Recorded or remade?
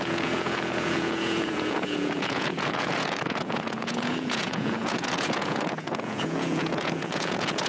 remade